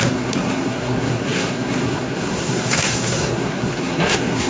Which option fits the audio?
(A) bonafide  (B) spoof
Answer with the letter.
B